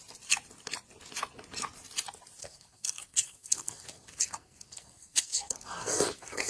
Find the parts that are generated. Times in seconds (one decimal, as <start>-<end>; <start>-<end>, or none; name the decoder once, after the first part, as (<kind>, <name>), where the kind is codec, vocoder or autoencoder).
2.4-6.5 (codec, SNAC)